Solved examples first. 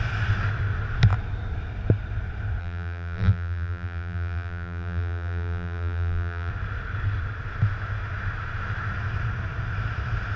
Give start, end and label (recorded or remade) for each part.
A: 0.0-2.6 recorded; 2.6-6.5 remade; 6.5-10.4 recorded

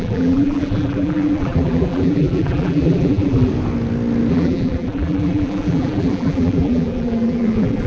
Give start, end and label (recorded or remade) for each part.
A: 0.0-3.5 remade; 3.5-4.3 recorded; 4.3-7.9 remade

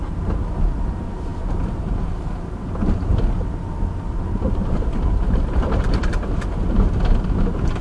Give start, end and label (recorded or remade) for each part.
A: 0.0-4.6 recorded; 4.6-6.3 remade; 6.3-7.8 recorded

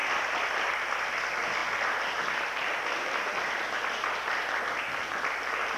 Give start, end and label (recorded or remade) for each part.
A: 0.0-5.8 recorded

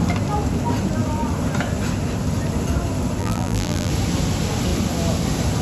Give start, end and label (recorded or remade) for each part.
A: 0.0-3.2 recorded; 3.2-3.9 remade; 3.9-5.6 recorded

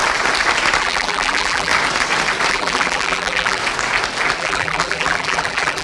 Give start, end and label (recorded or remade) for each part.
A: 0.0-0.8 recorded; 0.8-1.7 remade; 1.7-2.5 recorded; 2.5-3.6 remade; 3.6-4.4 recorded; 4.4-5.8 remade